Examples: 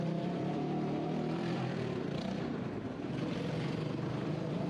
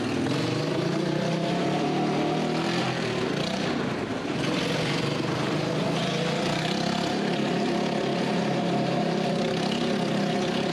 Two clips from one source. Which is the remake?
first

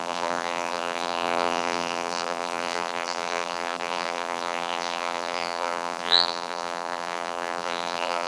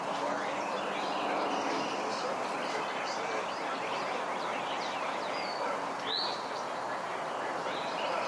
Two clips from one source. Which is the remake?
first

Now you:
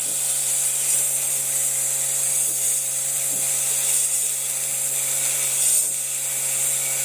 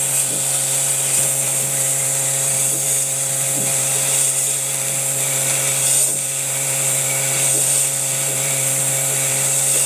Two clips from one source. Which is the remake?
second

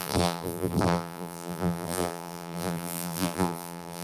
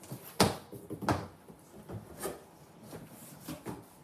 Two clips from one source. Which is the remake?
first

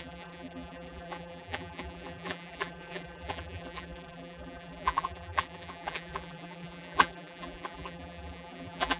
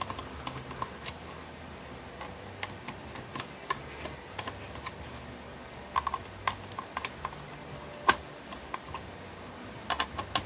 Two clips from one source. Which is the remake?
first